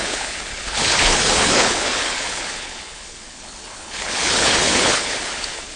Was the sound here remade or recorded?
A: remade